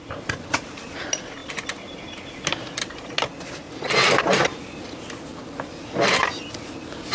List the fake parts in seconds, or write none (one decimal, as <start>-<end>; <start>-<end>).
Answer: none